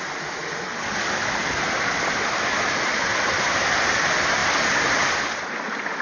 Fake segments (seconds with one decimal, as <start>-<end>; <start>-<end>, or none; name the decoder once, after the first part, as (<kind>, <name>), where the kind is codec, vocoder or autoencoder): none